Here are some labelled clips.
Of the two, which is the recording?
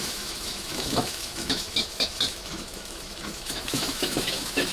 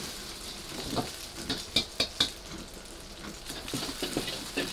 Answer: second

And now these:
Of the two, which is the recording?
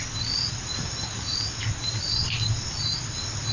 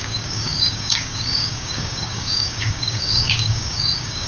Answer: first